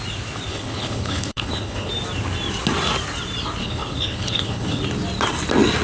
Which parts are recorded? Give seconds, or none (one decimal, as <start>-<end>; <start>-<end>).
0.0-0.5; 1.9-3.6; 4.8-5.8